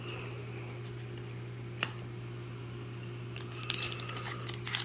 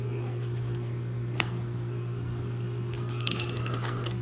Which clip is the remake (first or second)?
second